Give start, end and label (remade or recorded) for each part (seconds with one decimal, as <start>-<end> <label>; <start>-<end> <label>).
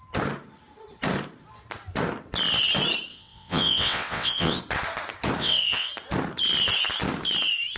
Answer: 0.0-3.1 recorded; 3.1-4.6 remade; 4.6-5.4 recorded; 5.4-5.9 remade; 5.9-7.8 recorded